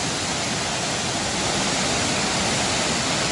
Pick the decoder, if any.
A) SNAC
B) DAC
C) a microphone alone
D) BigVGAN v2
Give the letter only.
C